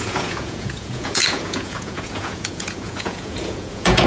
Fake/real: fake